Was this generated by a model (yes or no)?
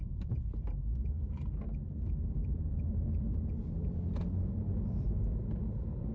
yes